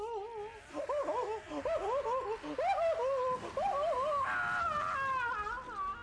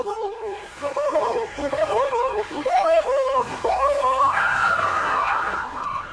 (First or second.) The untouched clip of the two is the first